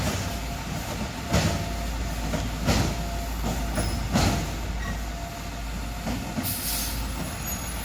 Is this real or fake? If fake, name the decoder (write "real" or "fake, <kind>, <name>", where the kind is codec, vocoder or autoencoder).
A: real